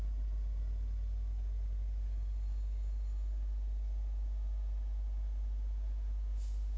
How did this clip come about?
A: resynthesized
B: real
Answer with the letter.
B